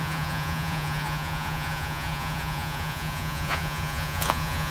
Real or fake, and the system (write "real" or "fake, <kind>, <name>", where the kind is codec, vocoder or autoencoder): fake, vocoder, Vocos